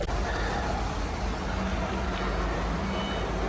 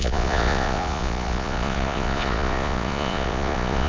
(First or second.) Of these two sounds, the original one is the first